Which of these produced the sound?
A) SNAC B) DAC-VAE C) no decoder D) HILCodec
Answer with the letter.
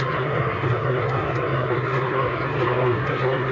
A